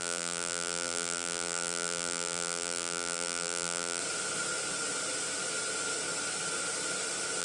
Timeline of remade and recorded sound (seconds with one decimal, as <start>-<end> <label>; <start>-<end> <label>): 0.0-4.0 remade; 4.0-7.4 recorded